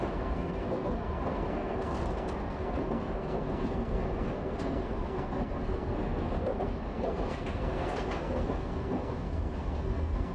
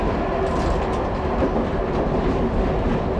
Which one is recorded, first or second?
second